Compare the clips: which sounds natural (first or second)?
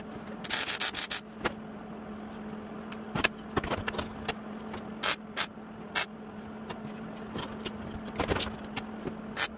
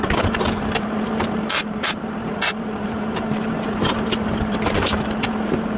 first